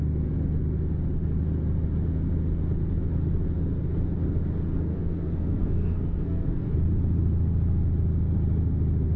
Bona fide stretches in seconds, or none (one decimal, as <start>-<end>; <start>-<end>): 0.0-4.9; 6.7-9.2